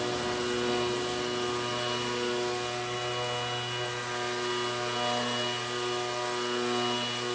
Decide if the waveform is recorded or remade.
recorded